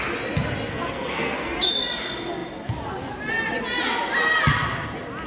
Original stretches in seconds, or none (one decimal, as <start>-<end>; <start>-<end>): 0.0-0.7; 1.7-5.3